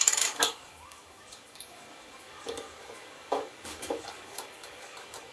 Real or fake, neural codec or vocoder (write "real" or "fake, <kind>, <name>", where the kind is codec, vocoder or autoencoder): fake, codec, DAC